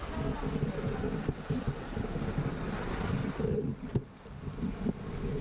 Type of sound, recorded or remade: recorded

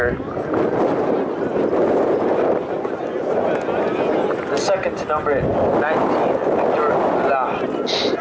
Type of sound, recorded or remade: recorded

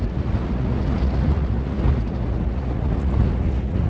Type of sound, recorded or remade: remade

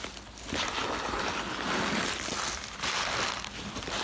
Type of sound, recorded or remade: recorded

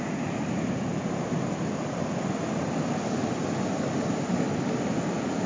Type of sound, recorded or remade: recorded